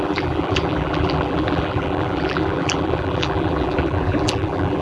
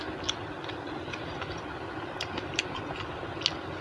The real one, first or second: second